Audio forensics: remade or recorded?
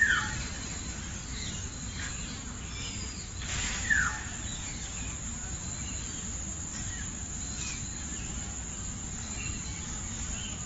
recorded